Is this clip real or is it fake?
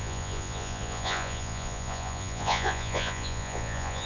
fake